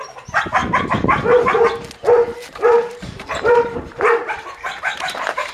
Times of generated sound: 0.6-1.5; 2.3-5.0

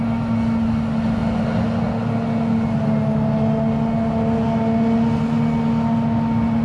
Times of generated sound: none